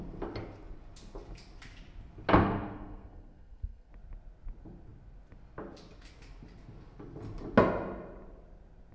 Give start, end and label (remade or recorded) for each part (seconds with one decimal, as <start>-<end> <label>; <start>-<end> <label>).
0.0-2.4 recorded; 2.4-3.9 remade; 3.9-8.9 recorded

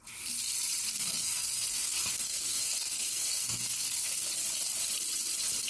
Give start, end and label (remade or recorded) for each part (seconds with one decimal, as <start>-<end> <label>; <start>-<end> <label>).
0.0-0.9 recorded; 0.9-4.3 remade; 4.3-5.7 recorded